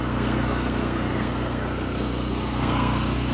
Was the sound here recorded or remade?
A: remade